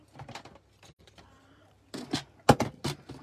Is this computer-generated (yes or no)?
no